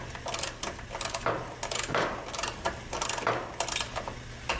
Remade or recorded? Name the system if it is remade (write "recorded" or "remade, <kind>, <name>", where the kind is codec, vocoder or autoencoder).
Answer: recorded